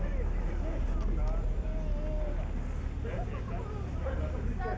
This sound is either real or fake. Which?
real